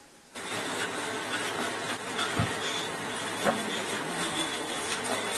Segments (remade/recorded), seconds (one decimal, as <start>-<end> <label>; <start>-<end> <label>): 0.0-4.1 recorded; 4.1-5.0 remade; 5.0-5.4 recorded

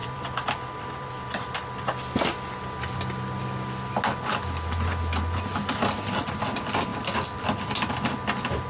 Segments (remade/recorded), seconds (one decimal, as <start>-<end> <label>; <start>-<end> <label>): 0.0-1.7 remade; 1.7-8.7 recorded

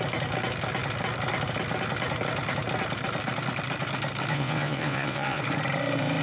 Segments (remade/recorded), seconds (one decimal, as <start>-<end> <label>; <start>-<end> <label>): 0.0-4.3 recorded; 4.3-5.4 remade; 5.4-6.2 recorded